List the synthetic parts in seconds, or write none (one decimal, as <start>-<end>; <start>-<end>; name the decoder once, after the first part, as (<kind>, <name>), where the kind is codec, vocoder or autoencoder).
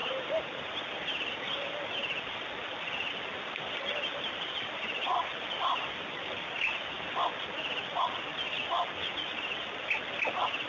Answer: 0.0-0.8 (vocoder, BigVGAN v2)